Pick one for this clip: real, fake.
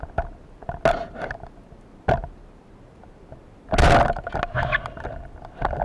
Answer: real